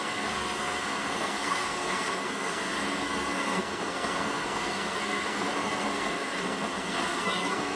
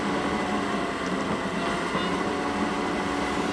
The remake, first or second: first